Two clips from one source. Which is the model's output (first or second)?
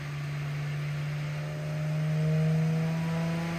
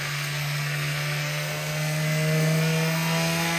second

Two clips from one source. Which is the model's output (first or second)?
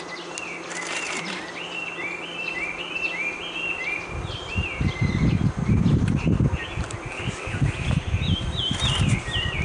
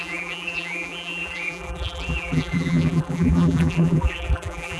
second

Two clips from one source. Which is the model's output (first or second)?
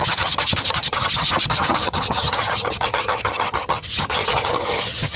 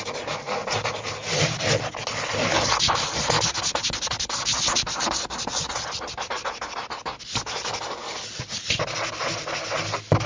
first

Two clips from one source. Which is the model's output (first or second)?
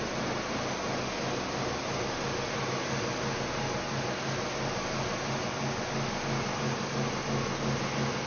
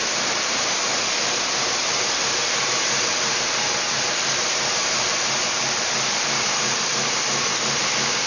second